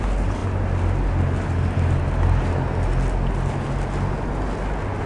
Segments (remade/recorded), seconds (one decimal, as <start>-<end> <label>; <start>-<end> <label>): 0.0-5.1 recorded